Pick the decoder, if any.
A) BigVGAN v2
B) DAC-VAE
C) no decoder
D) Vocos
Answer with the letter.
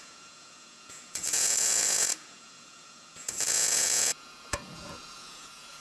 D